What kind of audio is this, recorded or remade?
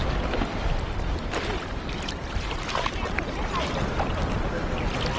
recorded